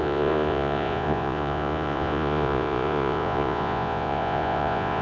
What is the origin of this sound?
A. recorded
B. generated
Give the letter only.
B